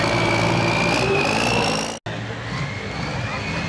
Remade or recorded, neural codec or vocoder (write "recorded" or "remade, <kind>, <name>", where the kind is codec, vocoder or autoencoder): recorded